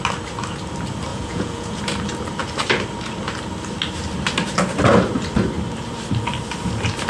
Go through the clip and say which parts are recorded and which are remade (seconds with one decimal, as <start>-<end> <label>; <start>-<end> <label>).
0.0-1.1 recorded; 1.1-1.8 remade; 1.8-7.1 recorded